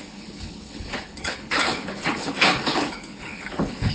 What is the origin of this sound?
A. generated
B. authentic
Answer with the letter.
A